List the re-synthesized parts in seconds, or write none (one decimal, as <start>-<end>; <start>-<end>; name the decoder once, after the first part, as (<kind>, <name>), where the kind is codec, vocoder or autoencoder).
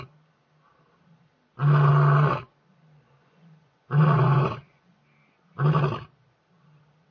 3.2-5.0 (vocoder, Vocos)